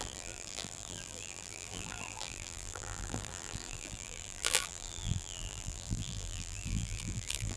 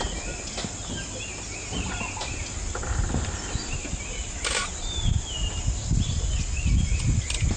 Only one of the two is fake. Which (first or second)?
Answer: first